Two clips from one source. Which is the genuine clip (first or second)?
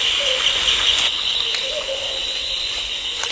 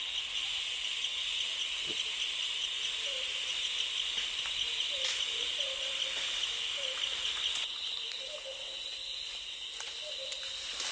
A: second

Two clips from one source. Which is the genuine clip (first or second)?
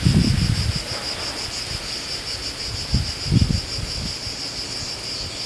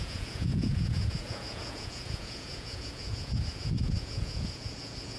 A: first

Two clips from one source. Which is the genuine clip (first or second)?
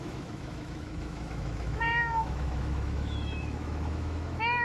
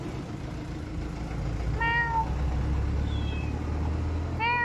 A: second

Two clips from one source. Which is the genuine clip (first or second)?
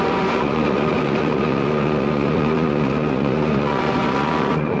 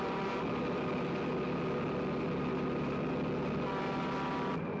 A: second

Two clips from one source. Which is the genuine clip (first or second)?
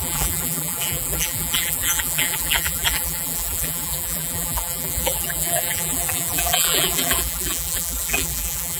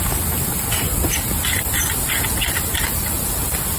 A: second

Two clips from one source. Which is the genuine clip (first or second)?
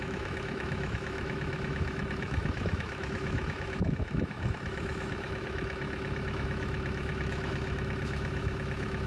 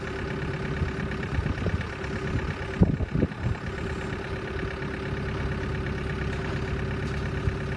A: second